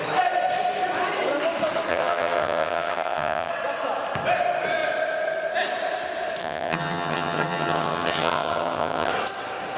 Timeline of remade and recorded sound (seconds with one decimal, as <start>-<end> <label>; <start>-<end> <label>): 0.0-1.9 recorded; 1.9-3.5 remade; 3.5-6.4 recorded; 6.4-9.1 remade; 9.1-9.8 recorded